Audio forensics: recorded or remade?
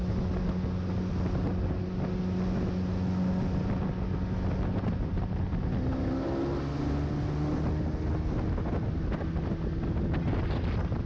recorded